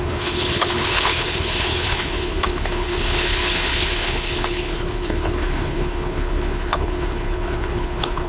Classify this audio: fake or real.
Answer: fake